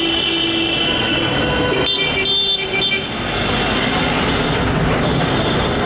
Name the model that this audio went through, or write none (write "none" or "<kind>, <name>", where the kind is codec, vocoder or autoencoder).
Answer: none